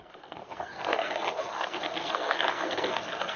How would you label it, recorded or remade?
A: remade